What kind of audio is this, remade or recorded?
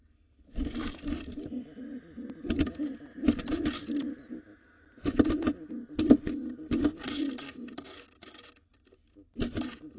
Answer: recorded